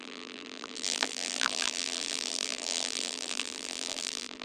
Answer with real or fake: fake